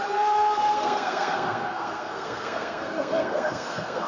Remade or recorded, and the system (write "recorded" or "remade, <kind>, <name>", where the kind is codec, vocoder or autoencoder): remade, codec, SNAC